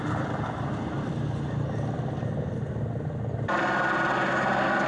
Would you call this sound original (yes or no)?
yes